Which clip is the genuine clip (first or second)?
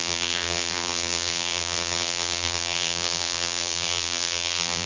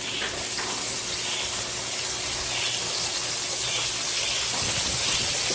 second